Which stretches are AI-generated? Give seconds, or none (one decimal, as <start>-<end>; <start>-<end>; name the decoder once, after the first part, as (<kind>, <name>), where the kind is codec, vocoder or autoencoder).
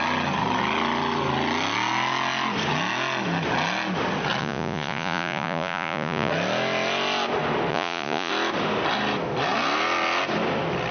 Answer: 4.4-6.3 (vocoder, Vocos); 7.7-8.3